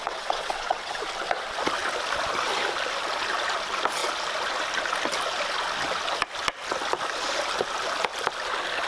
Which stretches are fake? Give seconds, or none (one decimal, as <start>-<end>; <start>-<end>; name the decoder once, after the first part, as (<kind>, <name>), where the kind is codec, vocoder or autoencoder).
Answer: 0.0-1.0 (vocoder, WaveNeXt)